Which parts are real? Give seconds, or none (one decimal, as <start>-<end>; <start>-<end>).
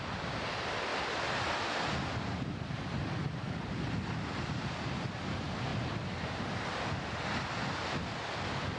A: 0.0-8.8